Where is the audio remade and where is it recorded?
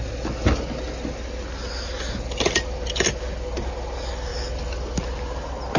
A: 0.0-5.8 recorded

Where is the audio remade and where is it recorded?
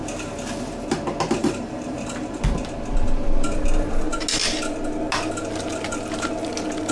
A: 0.0-1.4 recorded; 1.4-2.4 remade; 2.4-6.9 recorded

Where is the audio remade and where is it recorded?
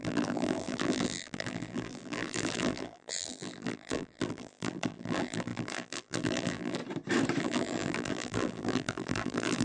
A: 0.0-6.8 remade; 6.8-7.4 recorded; 7.4-9.6 remade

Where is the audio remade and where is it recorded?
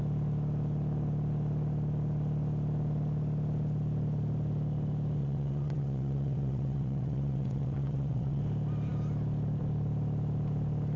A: 0.0-5.2 recorded; 5.2-8.4 remade; 8.4-11.0 recorded